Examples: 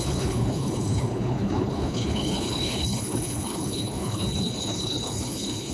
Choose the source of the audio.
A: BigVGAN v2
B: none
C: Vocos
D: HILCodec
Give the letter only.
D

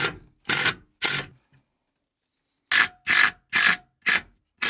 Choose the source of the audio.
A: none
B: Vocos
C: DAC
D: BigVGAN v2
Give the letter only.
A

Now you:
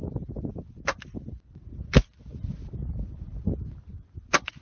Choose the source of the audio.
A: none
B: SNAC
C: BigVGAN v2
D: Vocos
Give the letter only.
A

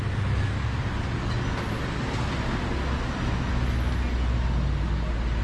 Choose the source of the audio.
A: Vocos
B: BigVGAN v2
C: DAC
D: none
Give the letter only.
D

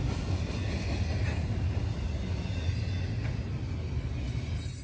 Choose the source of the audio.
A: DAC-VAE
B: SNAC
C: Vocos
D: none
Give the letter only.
D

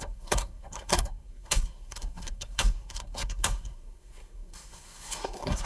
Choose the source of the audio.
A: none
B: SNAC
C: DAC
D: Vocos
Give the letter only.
B